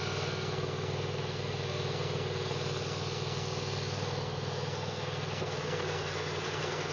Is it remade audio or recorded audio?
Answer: remade